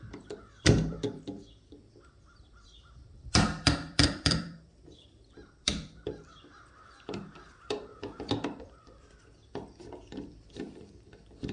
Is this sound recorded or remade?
remade